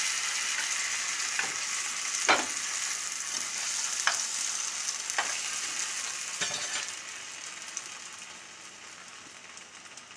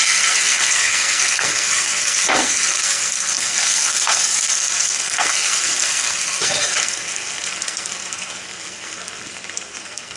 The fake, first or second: second